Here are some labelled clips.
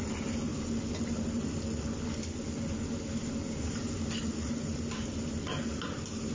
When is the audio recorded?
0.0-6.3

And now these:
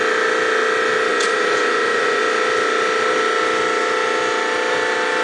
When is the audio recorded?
0.0-1.1; 2.2-5.2

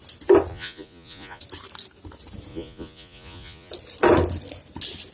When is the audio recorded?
0.0-0.5; 1.4-2.5; 3.7-5.1

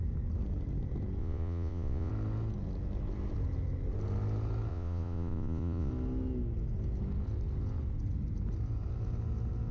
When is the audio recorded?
0.0-1.2; 2.1-4.7; 5.9-9.7

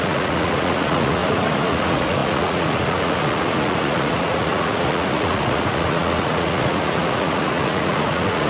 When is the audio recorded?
none